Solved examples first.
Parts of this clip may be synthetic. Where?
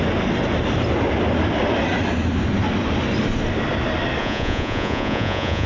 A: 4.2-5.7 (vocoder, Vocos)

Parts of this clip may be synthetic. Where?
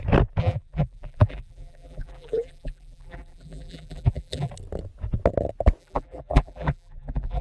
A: 0.4-4.5 (vocoder, BigVGAN v2); 5.8-7.4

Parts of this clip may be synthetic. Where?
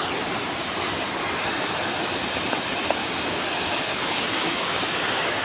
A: 3.0-5.4 (codec, DAC)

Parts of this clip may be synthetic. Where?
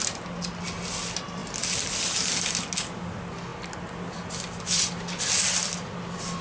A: none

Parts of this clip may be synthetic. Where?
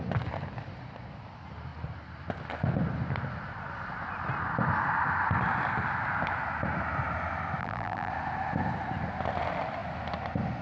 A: 7.6-8.1 (vocoder, BigVGAN v2)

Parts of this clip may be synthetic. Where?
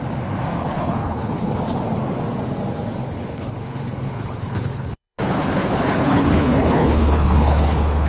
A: 0.6-1.6 (codec, HILCodec); 3.0-8.1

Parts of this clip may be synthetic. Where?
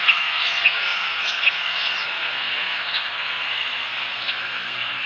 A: 0.0-5.1 (codec, SNAC)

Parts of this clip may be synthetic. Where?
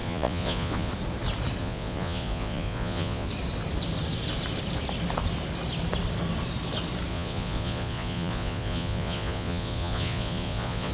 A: 0.0-0.9 (vocoder, Vocos); 1.6-3.3; 7.1-10.9